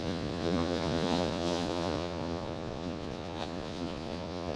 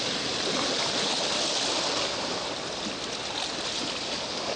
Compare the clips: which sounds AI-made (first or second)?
first